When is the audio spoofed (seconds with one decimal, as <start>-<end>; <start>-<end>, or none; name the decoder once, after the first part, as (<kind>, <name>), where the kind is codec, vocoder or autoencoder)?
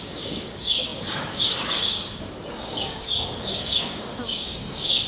0.0-5.1 (codec, DAC)